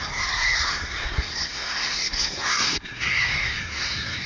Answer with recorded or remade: remade